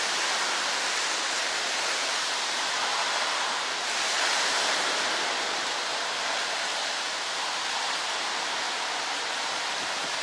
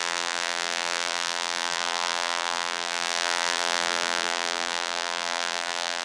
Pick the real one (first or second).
first